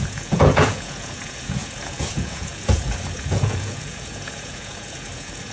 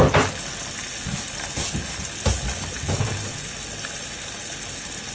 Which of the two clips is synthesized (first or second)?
first